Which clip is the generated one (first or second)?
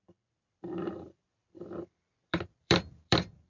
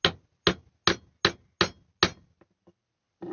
first